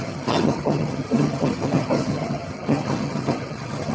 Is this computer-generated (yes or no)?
yes